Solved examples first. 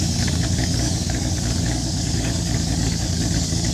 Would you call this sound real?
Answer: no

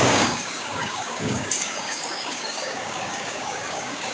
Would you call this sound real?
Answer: no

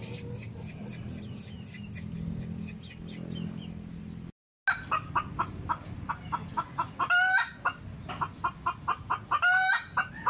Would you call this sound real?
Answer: yes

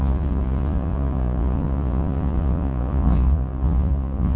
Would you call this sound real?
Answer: no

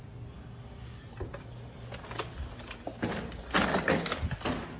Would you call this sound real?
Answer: yes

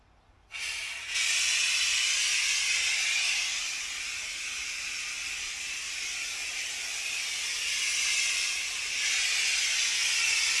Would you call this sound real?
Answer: yes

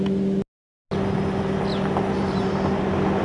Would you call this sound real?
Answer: yes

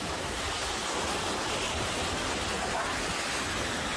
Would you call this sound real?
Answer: yes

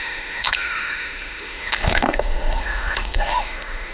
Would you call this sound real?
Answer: no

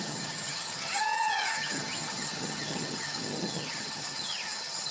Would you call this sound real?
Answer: no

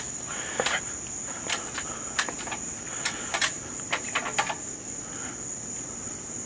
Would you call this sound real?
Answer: yes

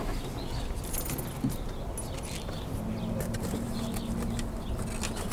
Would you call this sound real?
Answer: yes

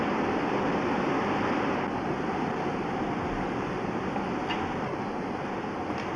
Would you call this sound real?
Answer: yes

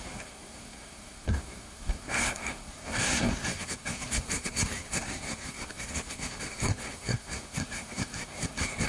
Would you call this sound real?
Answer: no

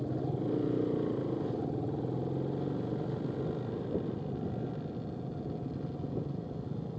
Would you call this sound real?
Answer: yes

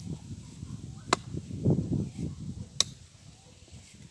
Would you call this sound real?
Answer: yes